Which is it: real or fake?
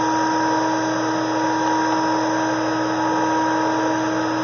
real